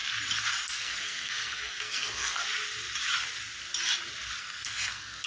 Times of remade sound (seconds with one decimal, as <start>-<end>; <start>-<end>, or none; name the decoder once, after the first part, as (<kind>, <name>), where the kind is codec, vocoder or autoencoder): 0.8-2.4 (codec, SNAC); 4.4-5.3